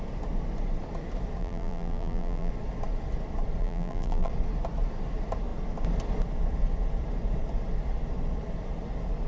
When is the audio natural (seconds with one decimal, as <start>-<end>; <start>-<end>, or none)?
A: 0.0-1.4; 2.5-3.6; 4.3-9.3